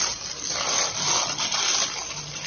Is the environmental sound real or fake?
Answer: real